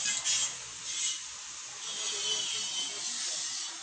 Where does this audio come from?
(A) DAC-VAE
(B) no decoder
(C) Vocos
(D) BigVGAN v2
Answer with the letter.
B